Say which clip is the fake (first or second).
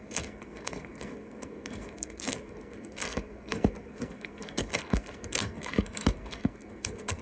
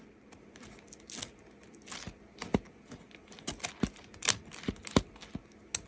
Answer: first